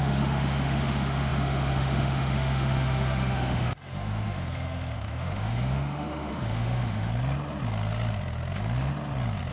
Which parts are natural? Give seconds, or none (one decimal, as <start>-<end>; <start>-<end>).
7.1-9.5